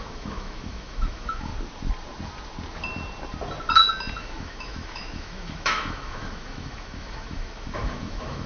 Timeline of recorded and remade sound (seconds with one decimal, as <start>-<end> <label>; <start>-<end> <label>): 0.0-1.5 remade; 1.5-4.2 recorded; 4.2-8.5 remade